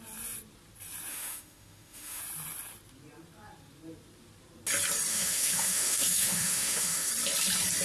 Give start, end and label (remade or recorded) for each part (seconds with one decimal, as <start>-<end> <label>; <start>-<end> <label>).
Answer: 0.0-1.1 recorded; 1.1-2.2 remade; 2.2-5.1 recorded; 5.1-7.1 remade; 7.1-7.8 recorded